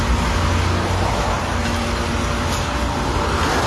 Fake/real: real